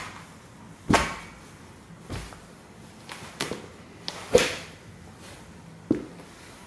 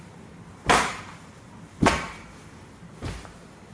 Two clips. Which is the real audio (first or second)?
first